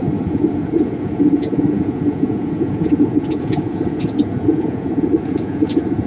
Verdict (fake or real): fake